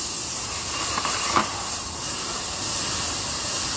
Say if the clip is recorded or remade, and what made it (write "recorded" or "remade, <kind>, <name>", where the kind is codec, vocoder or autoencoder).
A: remade, vocoder, BigVGAN v2